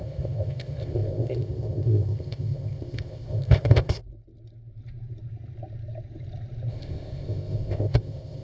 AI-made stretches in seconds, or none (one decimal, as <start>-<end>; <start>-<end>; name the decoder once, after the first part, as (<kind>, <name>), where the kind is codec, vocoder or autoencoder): 0.0-4.0 (codec, ZipCodec); 6.7-8.4